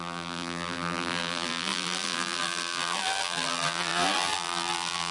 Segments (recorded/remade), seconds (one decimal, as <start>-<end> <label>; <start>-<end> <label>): 0.0-5.1 remade